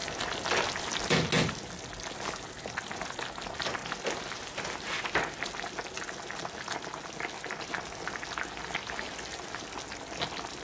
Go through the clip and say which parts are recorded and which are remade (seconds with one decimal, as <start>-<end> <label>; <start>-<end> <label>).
0.0-10.6 recorded